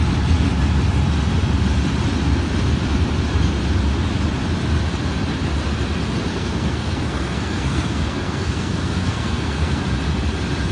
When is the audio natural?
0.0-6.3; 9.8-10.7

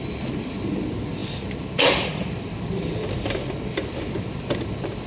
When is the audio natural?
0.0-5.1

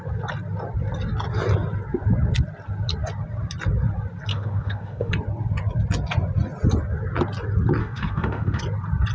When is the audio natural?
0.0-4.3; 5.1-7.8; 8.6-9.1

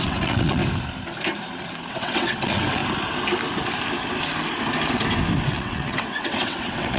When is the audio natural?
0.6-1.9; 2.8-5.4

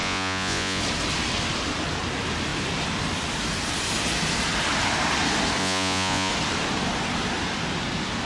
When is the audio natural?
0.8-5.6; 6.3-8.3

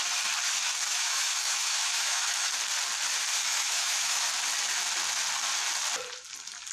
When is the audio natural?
0.0-0.9; 2.5-3.4; 4.3-6.7